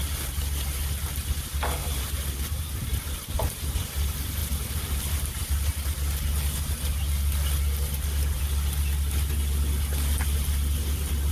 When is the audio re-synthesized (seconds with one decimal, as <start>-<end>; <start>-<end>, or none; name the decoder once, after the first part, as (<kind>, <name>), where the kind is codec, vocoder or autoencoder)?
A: 1.8-3.3 (vocoder, BigVGAN v2)

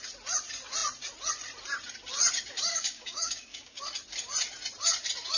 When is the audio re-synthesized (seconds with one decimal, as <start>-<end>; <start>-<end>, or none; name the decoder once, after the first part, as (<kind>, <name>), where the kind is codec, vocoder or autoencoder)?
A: 2.7-3.8 (codec, DAC)

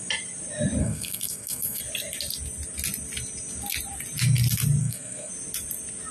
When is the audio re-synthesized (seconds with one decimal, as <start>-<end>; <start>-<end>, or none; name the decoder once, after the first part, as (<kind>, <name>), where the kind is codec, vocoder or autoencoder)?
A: 0.8-1.8 (codec, SNAC); 4.8-5.3